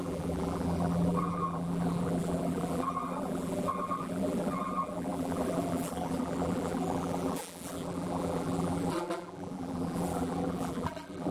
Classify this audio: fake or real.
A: fake